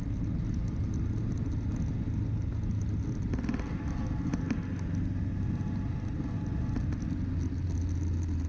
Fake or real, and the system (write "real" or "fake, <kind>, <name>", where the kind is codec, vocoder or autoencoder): real